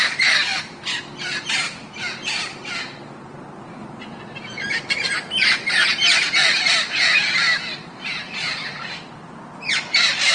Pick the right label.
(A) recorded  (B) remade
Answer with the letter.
B